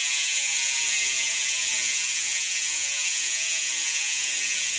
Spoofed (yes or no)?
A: yes